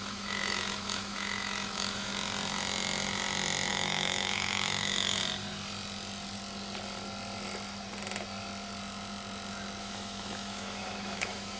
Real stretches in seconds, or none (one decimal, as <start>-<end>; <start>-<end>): 2.1-3.7; 5.2-9.8